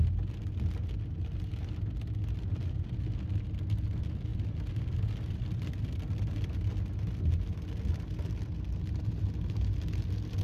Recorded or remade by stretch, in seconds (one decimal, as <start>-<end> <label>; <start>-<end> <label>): 0.0-10.4 recorded